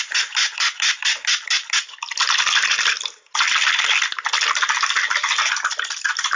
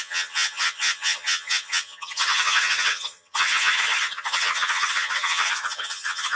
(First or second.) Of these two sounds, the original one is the first